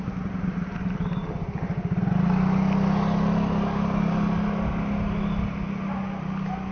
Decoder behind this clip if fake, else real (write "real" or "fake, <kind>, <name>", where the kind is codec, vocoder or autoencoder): real